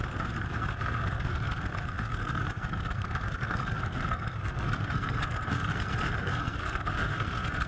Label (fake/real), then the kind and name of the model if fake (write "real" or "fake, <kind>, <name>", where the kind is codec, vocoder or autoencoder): fake, codec, SNAC